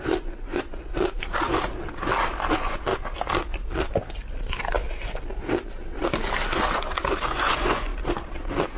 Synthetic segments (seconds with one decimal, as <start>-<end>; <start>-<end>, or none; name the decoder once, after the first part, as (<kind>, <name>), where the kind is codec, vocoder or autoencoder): 0.0-0.9 (vocoder, Vocos); 2.5-2.9; 7.3-7.9